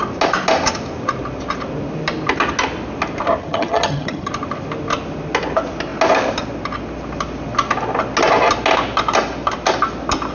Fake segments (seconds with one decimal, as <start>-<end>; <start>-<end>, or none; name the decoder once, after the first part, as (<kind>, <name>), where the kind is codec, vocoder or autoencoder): 3.4-4.3 (vocoder, HiFi-GAN)